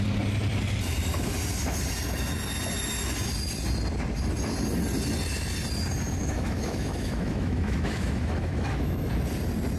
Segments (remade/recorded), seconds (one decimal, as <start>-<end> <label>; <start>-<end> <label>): 0.0-6.2 recorded; 6.2-9.1 remade; 9.1-9.8 recorded